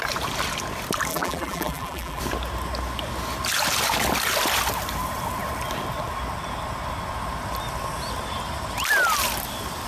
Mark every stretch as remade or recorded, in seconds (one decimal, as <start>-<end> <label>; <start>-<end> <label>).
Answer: 0.0-1.1 recorded; 1.1-2.2 remade; 2.2-9.9 recorded